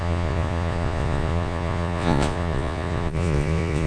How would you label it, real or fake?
fake